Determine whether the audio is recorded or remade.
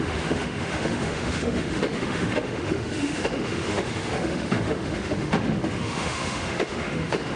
remade